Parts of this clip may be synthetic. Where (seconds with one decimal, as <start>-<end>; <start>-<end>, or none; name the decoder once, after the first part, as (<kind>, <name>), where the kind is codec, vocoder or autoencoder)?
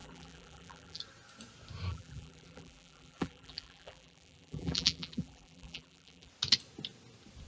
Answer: 0.0-1.0 (vocoder, BigVGAN v2); 1.9-6.3